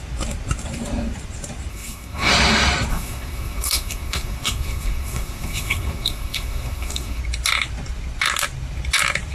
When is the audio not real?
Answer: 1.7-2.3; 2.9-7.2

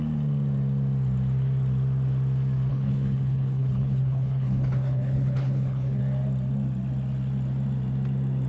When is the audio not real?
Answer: 2.7-6.0

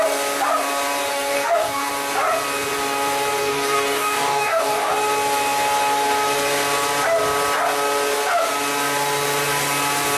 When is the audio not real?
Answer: 1.1-1.9; 3.4-4.9